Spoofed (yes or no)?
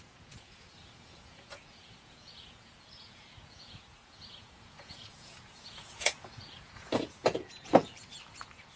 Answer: yes